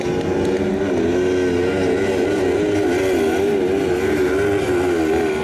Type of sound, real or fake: real